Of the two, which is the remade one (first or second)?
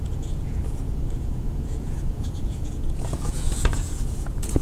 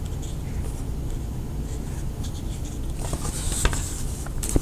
first